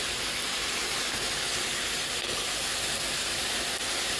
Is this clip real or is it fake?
real